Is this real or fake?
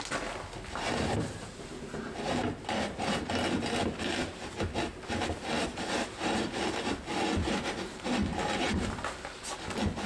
real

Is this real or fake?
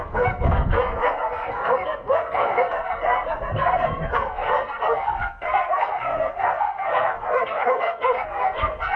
fake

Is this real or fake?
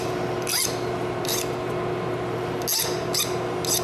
real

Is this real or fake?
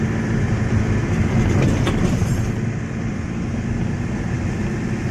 real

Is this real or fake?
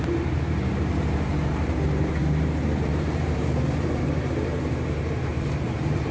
fake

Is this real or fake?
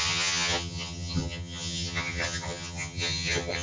fake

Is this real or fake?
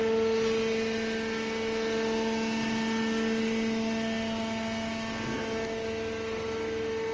real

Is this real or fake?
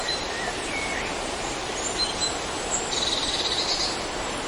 fake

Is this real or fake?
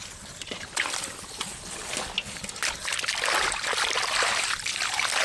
real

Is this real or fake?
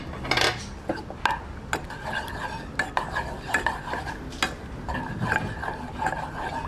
real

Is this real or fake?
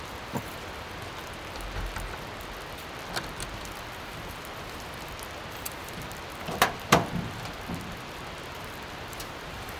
fake